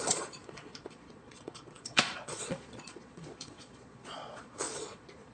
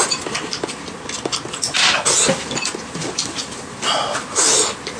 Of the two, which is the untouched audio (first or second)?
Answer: second